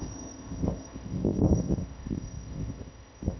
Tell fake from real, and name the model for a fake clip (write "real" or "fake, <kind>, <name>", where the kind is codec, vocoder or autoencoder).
fake, codec, ZipCodec